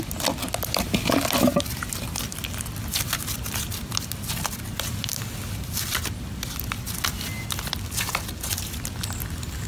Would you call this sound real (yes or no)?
yes